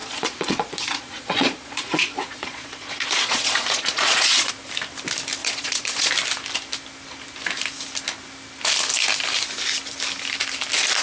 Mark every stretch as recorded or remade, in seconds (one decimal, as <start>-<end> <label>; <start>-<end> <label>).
0.0-4.5 remade; 4.5-5.4 recorded; 5.4-6.1 remade; 6.1-11.0 recorded